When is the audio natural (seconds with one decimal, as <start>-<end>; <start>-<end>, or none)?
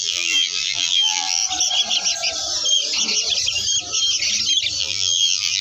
1.4-4.8